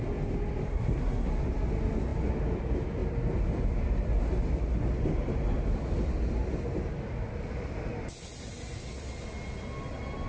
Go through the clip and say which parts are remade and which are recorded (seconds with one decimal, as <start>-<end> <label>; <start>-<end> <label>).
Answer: 0.0-0.7 recorded; 0.7-1.3 remade; 1.3-10.3 recorded